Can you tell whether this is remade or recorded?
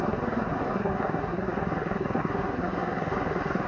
remade